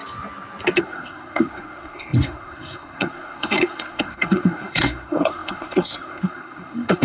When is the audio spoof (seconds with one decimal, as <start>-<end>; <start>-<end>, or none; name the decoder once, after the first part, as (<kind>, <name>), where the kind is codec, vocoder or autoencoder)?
0.8-7.0 (codec, SNAC)